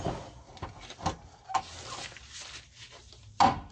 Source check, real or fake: real